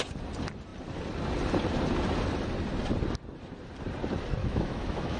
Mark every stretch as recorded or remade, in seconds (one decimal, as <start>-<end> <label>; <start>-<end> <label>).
0.0-4.4 recorded; 4.4-5.2 remade